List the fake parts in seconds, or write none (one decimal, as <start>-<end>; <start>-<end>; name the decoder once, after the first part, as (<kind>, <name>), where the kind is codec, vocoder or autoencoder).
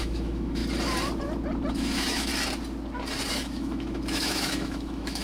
0.0-0.6 (autoencoder, DAC-VAE); 1.7-2.3; 3.3-5.2